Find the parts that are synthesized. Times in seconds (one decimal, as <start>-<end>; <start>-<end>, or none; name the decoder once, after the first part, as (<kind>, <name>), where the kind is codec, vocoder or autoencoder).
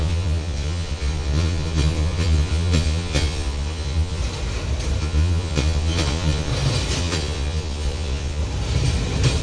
0.0-4.2 (vocoder, Vocos); 5.0-6.5; 7.0-8.4